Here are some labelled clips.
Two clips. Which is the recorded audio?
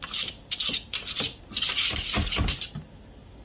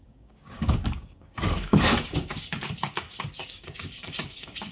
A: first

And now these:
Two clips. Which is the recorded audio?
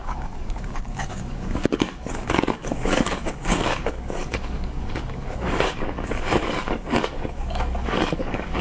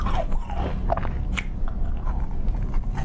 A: second